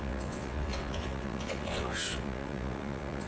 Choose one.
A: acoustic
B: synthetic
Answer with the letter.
B